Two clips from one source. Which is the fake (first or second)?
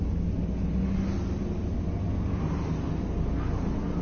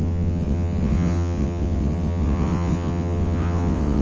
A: second